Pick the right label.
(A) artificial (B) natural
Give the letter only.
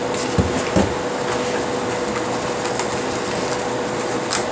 B